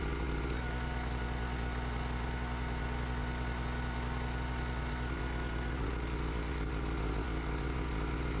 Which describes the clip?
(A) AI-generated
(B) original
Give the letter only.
B